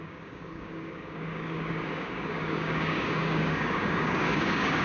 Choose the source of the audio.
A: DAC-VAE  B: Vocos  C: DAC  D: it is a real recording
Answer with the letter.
C